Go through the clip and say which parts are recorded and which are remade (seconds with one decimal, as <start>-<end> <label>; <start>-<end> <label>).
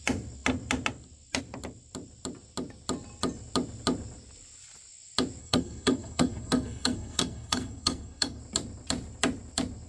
0.0-5.4 recorded; 5.4-8.4 remade; 8.4-9.9 recorded